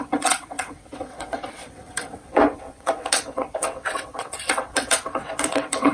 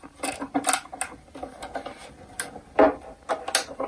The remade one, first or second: first